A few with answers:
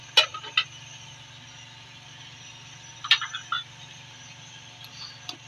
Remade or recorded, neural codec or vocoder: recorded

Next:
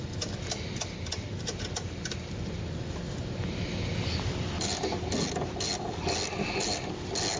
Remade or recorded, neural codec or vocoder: recorded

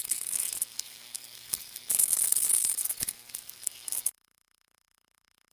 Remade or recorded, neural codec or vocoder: remade, codec, SNAC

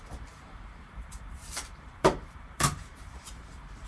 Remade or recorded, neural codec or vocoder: remade, vocoder, BigVGAN v2